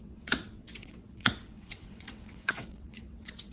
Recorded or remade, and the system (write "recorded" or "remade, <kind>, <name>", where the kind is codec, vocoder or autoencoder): remade, vocoder, WaveNeXt